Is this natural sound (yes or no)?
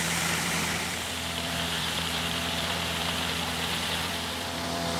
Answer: no